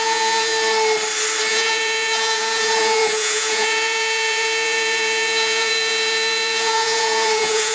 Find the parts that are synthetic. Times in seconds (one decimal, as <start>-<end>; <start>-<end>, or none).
0.0-0.5; 1.5-7.7